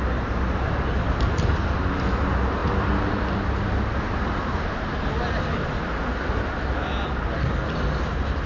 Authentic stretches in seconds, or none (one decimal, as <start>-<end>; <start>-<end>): 0.0-8.5

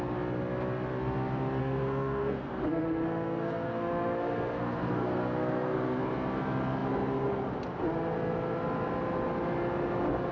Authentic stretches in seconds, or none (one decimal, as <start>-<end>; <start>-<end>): 0.0-1.6; 6.0-10.3

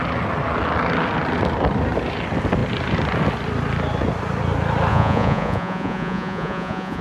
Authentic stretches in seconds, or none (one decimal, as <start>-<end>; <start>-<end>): 0.0-4.9

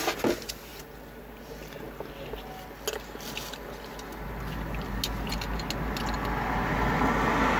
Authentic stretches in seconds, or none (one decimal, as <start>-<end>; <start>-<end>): 0.0-7.6

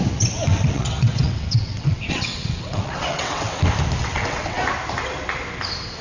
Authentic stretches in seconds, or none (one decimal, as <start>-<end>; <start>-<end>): 0.0-0.5; 3.6-4.0; 4.6-6.0

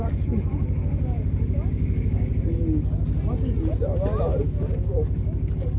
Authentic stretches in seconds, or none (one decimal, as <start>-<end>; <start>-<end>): 0.0-0.5; 2.3-4.3

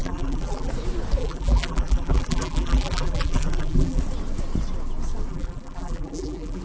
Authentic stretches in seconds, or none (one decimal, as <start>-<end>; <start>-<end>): 0.7-1.2; 4.0-5.3